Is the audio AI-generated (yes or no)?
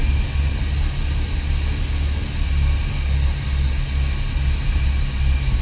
no